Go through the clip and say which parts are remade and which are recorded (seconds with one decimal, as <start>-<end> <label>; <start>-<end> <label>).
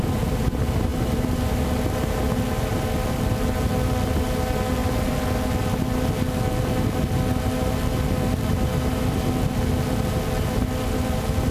0.0-11.5 recorded